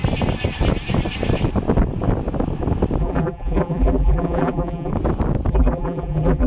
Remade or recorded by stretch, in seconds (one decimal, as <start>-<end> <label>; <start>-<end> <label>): 0.0-3.0 recorded; 3.0-4.9 remade; 4.9-5.5 recorded; 5.5-6.5 remade